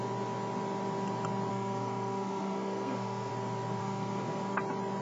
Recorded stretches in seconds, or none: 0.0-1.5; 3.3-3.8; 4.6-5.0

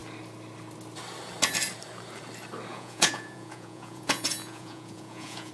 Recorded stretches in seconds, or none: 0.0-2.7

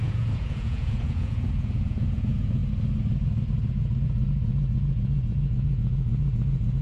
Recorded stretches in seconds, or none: 2.6-4.0

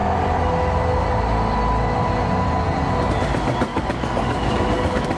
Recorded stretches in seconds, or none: 0.0-3.7

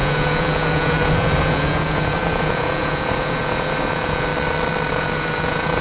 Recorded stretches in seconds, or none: 4.3-4.9

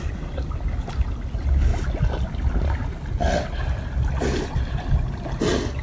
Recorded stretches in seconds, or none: 0.0-5.8

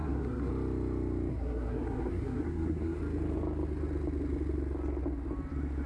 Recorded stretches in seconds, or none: 0.5-1.3; 3.0-5.9